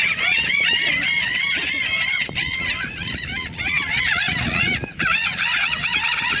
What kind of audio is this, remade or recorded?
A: remade